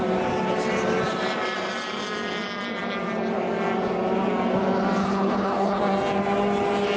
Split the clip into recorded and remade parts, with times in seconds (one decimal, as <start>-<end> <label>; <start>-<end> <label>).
0.0-5.0 recorded; 5.0-5.8 remade; 5.8-7.0 recorded